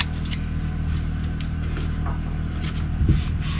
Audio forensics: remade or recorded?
recorded